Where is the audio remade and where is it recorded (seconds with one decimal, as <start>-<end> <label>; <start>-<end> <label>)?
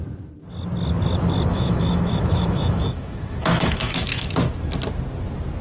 0.0-1.5 recorded; 1.5-4.3 remade; 4.3-5.6 recorded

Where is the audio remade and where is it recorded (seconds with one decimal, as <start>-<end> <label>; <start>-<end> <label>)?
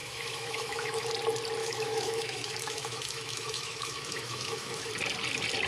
0.0-1.1 remade; 1.1-1.6 recorded; 1.6-4.9 remade; 4.9-5.7 recorded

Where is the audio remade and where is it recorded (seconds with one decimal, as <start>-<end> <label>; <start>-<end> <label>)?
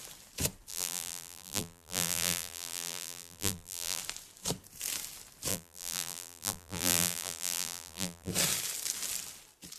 0.0-0.7 recorded; 0.7-4.0 remade; 4.0-5.5 recorded; 5.5-8.3 remade; 8.3-9.8 recorded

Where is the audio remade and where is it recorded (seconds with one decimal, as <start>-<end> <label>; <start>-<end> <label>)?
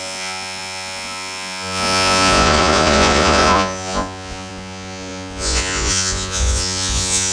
0.0-7.3 remade